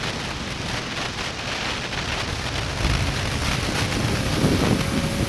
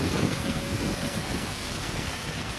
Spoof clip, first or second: second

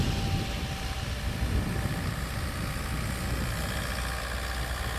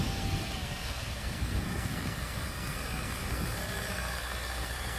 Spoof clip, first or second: second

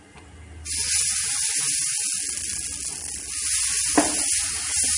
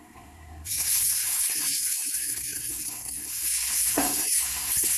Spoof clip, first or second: second